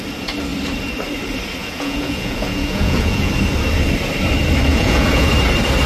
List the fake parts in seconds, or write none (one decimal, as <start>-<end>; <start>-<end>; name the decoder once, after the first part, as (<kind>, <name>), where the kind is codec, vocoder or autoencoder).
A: 1.6-3.3 (vocoder, Vocos); 4.7-5.3

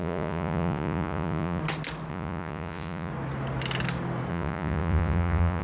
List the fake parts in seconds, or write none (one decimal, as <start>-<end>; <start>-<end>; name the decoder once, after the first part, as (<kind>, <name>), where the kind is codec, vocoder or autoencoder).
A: 0.0-1.6 (vocoder, Vocos); 2.1-3.1; 4.3-5.6

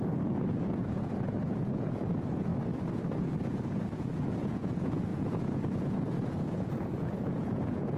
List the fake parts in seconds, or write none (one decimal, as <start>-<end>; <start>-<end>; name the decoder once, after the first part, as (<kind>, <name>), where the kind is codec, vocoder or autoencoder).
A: 0.0-2.5 (vocoder, Vocos); 3.2-8.0